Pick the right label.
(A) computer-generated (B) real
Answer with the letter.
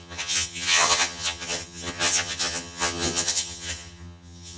A